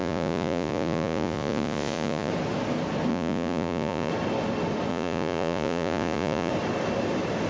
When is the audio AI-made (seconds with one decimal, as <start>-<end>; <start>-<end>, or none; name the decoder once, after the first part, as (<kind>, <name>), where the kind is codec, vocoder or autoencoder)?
0.0-2.3 (vocoder, Vocos); 3.1-4.1; 4.9-6.5